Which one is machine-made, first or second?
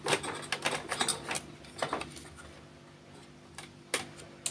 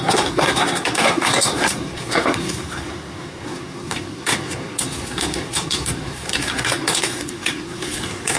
second